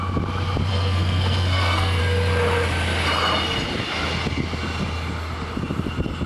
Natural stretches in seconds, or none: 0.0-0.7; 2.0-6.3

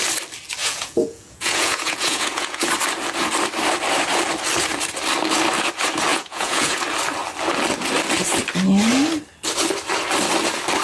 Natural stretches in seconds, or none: 0.0-0.6; 2.7-6.1; 6.8-10.8